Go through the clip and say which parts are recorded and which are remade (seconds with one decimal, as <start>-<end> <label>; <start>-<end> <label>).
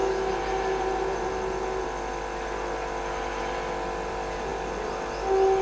0.0-5.6 recorded